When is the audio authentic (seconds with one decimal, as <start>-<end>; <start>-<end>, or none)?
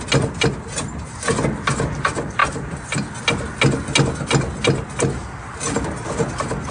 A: 0.0-6.7